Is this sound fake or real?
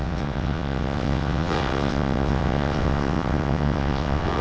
fake